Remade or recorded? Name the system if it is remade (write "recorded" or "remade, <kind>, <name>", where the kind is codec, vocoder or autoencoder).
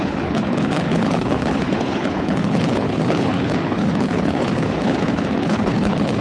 remade, codec, HILCodec